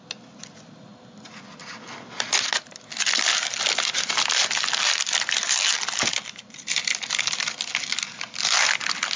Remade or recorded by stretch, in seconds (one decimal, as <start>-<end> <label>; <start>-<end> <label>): 0.0-9.2 recorded